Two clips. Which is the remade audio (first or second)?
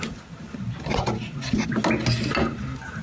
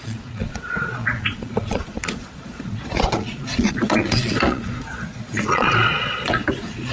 second